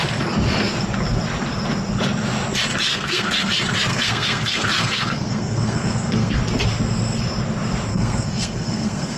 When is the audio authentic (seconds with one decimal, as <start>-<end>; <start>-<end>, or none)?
0.0-2.9; 3.5-3.9; 6.4-7.9